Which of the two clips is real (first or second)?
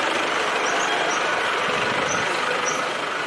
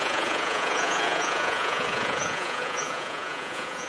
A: first